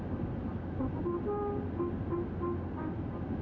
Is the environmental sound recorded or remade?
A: recorded